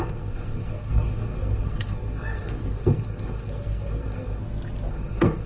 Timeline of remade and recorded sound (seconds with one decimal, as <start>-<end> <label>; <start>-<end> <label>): 0.0-4.4 remade; 4.4-4.9 recorded; 4.9-5.5 remade